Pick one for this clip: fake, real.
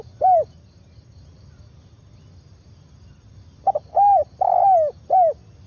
real